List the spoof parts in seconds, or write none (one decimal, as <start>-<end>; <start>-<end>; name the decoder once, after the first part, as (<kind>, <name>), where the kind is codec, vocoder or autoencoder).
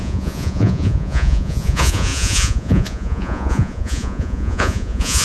0.0-5.2 (vocoder, Vocos)